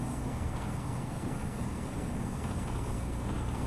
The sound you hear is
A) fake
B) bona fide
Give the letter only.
A